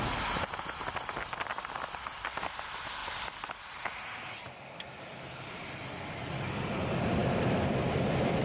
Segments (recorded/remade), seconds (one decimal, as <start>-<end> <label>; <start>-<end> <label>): 0.0-8.4 recorded